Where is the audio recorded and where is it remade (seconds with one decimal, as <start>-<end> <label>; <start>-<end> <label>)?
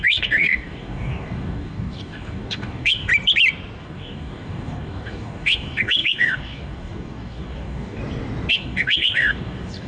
0.0-3.1 remade; 3.1-3.8 recorded; 3.8-8.0 remade; 8.0-8.5 recorded; 8.5-9.9 remade